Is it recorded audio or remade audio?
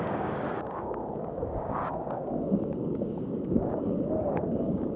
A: remade